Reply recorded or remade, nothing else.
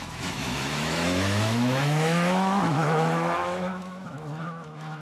remade